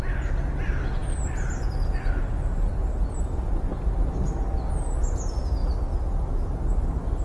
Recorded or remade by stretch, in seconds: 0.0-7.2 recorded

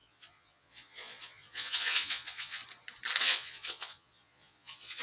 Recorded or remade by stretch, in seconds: 0.0-2.6 remade; 2.6-3.2 recorded; 3.2-5.0 remade

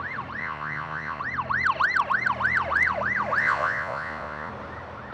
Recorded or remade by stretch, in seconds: 0.0-0.4 recorded; 0.4-1.2 remade; 1.2-3.4 recorded; 3.4-4.5 remade; 4.5-5.1 recorded

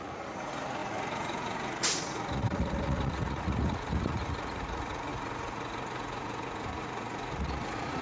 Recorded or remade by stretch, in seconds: 0.0-8.0 remade

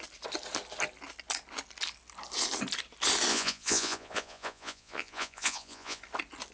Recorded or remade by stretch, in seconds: 0.0-3.3 recorded; 3.3-6.0 remade; 6.0-6.5 recorded

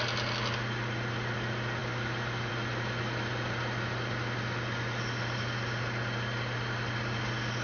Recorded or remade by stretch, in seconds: 0.0-7.6 recorded

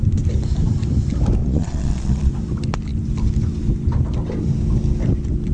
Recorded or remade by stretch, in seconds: 0.0-1.4 recorded; 1.4-2.3 remade; 2.3-5.5 recorded